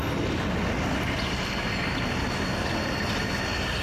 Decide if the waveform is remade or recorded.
recorded